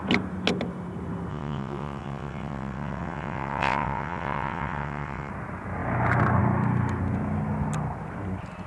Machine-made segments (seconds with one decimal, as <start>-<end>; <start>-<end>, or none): 1.3-5.3